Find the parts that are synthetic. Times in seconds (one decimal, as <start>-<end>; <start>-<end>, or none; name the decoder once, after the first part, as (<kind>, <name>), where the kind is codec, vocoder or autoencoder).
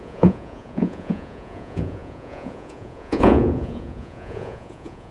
0.0-5.1 (vocoder, Vocos)